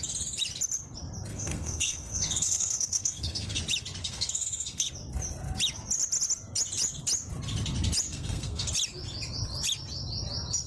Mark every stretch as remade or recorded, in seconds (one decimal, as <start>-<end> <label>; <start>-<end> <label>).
0.0-1.3 recorded; 1.3-3.6 remade; 3.6-4.0 recorded; 4.0-4.9 remade; 4.9-8.1 recorded; 8.1-8.7 remade; 8.7-10.7 recorded